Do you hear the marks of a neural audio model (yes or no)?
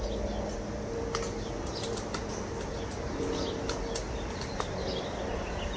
no